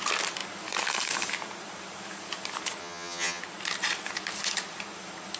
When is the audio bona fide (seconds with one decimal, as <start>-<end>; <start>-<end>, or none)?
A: 0.0-2.8; 3.4-5.4